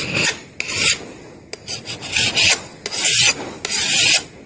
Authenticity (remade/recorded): recorded